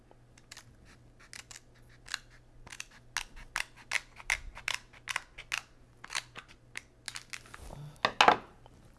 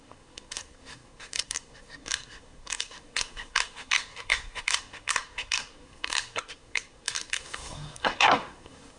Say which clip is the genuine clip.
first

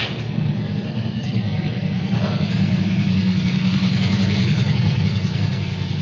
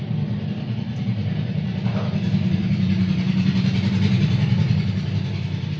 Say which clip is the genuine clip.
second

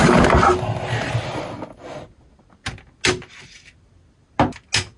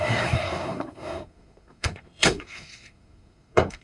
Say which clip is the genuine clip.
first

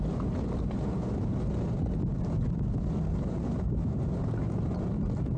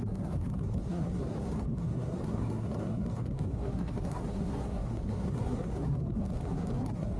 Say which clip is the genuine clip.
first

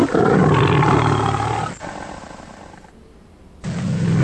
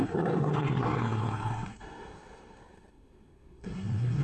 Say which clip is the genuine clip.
first